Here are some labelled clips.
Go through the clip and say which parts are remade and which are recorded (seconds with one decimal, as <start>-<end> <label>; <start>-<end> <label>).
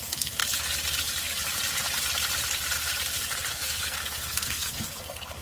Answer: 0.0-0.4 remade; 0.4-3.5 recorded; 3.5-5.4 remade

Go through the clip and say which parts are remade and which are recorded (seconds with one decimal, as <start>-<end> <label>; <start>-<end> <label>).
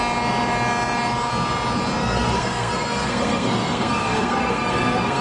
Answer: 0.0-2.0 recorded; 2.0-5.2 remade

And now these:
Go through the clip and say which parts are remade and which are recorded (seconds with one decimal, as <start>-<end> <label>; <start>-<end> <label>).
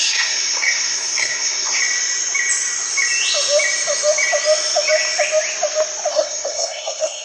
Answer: 0.0-1.8 remade; 1.8-6.1 recorded; 6.1-7.2 remade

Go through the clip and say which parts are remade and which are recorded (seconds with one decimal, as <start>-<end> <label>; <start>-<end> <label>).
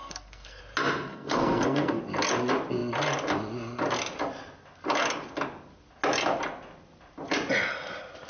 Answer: 0.0-0.6 remade; 0.6-1.1 recorded; 1.1-2.0 remade; 2.0-8.3 recorded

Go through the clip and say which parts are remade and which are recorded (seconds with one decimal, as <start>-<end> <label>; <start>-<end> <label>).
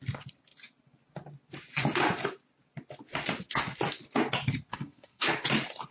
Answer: 0.0-4.7 recorded; 4.7-5.2 remade; 5.2-5.9 recorded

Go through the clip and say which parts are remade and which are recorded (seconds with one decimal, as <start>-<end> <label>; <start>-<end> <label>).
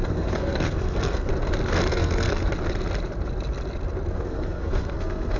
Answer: 0.0-1.3 remade; 1.3-1.9 recorded; 1.9-2.4 remade; 2.4-4.1 recorded; 4.1-5.4 remade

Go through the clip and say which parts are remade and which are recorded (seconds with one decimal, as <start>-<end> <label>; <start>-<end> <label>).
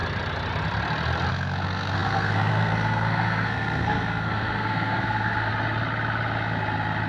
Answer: 0.0-1.3 recorded; 1.3-5.5 remade; 5.5-7.1 recorded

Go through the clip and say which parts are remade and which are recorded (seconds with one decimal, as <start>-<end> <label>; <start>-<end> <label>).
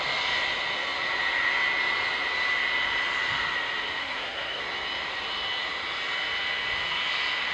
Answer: 0.0-4.0 recorded; 4.0-4.6 remade; 4.6-7.5 recorded